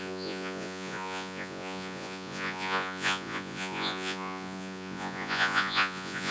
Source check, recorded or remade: remade